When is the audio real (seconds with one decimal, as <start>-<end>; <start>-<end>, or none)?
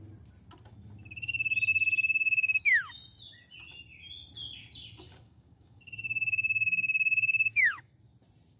0.0-1.7; 2.6-5.1; 7.9-8.6